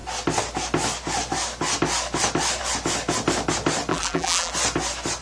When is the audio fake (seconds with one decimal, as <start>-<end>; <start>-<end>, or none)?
3.9-4.5

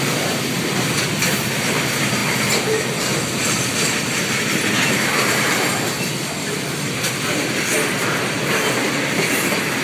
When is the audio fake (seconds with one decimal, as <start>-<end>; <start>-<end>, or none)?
0.0-2.2; 7.1-9.8

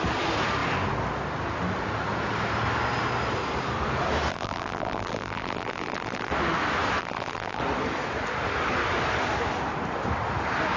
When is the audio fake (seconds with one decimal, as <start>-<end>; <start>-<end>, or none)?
4.3-6.3; 7.0-7.6